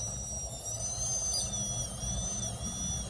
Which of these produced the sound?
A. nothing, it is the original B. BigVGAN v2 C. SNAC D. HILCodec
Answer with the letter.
A